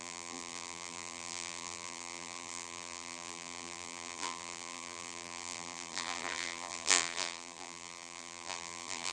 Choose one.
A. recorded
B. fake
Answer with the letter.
B